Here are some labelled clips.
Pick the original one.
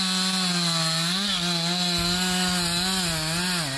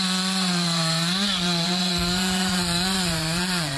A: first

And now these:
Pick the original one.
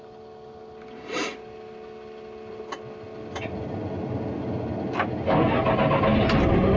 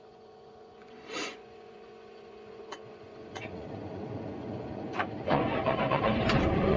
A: first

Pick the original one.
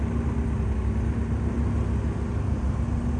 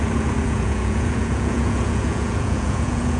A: first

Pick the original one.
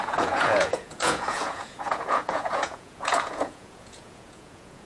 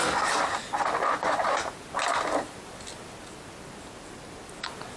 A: second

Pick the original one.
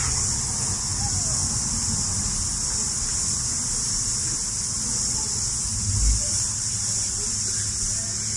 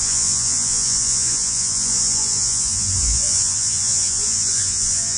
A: first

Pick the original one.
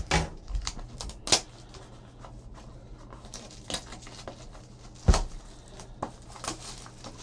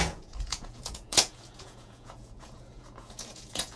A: first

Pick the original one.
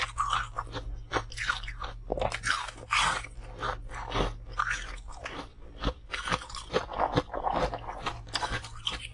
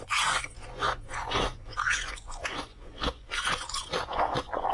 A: first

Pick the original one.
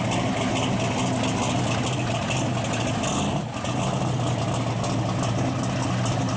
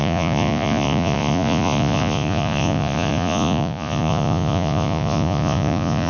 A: first